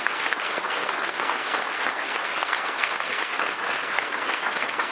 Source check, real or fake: fake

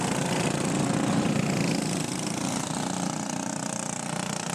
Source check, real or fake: real